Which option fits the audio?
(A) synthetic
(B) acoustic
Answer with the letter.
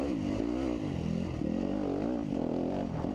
B